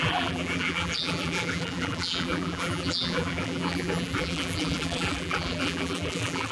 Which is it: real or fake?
fake